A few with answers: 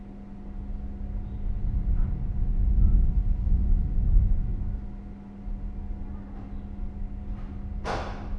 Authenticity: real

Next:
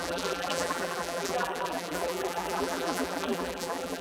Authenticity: fake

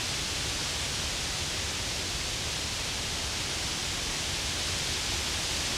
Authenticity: real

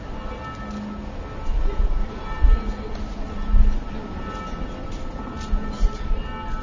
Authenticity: real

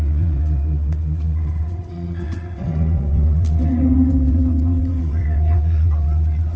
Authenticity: fake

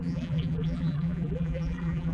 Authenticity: fake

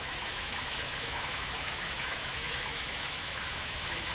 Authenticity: fake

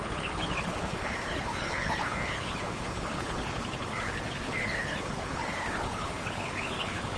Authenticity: fake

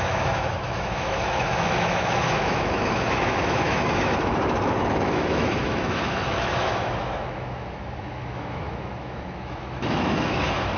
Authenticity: fake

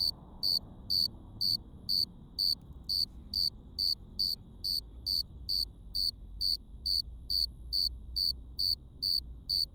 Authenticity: real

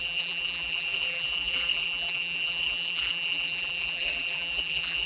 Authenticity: fake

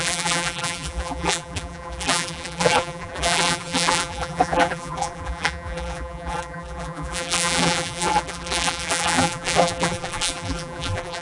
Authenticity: fake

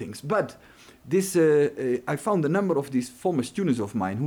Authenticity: real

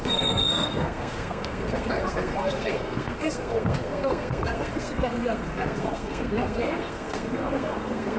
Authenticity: fake